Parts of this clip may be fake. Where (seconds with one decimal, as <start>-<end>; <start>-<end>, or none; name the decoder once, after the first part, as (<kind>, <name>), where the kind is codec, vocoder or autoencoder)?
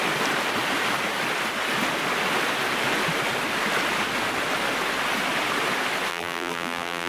6.1-7.1 (vocoder, BigVGAN v2)